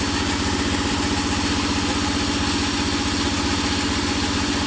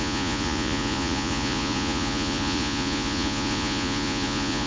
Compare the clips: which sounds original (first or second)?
first